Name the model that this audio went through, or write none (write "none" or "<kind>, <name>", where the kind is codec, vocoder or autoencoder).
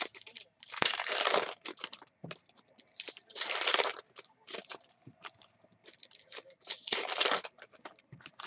vocoder, BigVGAN v2